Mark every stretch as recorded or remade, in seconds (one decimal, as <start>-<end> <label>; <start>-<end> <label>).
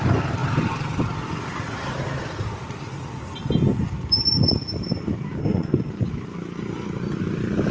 0.0-5.4 recorded; 5.4-5.9 remade; 5.9-7.7 recorded